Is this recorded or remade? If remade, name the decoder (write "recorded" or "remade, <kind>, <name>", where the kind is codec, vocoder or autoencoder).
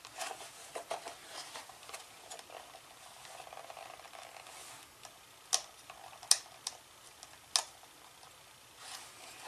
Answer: recorded